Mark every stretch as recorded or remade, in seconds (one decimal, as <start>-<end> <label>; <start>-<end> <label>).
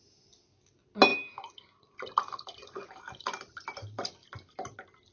0.0-1.1 recorded; 1.1-3.0 remade; 3.0-5.1 recorded